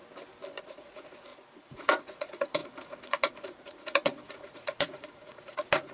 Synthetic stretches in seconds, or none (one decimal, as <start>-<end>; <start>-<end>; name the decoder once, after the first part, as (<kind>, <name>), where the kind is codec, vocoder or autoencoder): 0.6-5.9 (vocoder, Vocos)